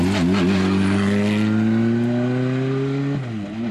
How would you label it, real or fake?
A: real